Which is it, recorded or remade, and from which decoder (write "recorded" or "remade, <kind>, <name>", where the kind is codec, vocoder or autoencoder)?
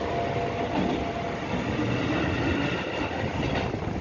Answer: recorded